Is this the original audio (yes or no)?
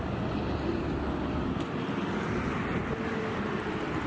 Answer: yes